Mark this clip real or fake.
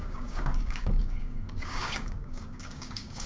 fake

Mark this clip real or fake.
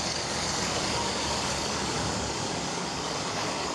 fake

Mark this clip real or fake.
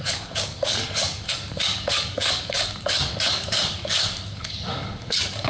fake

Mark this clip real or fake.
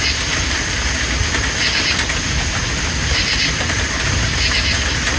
real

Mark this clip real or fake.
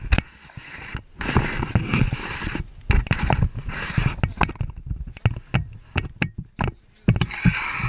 real